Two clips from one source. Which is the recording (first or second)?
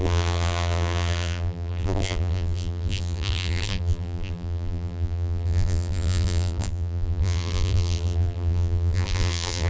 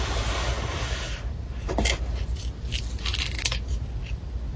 second